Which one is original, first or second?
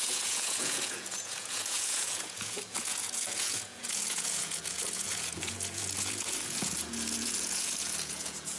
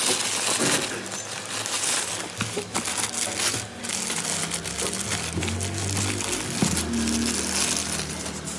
second